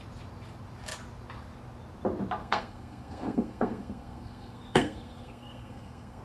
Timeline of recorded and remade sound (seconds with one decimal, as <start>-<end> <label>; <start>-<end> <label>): 0.0-2.4 recorded; 2.4-6.2 remade